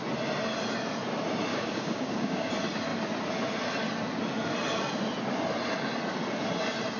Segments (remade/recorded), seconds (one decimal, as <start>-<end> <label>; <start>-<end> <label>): 0.0-1.5 recorded; 1.5-2.5 remade; 2.5-7.0 recorded